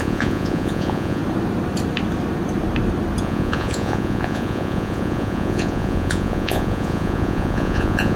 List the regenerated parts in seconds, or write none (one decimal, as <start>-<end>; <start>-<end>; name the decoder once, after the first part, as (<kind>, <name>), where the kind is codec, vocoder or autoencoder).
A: 0.0-1.2 (vocoder, Vocos); 3.2-8.2